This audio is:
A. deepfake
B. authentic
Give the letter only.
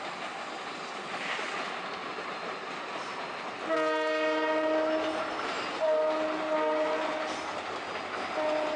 B